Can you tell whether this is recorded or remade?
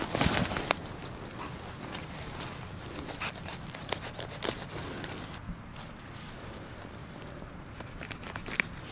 recorded